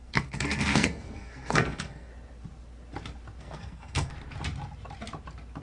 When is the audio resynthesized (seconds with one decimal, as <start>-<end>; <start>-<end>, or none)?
0.0-2.1; 3.4-4.1